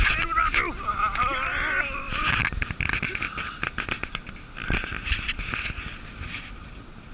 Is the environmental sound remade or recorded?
recorded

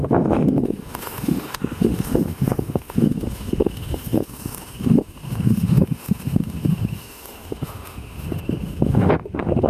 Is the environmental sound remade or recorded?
remade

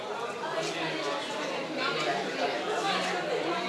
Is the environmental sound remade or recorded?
remade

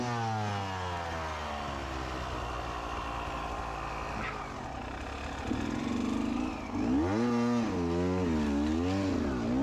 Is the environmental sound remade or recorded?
recorded